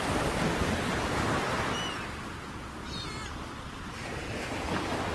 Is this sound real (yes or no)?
yes